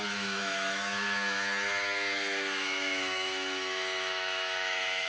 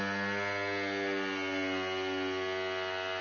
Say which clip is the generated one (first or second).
first